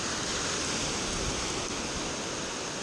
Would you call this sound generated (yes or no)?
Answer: no